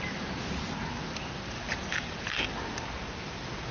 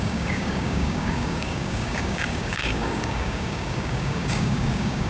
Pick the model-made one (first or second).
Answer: second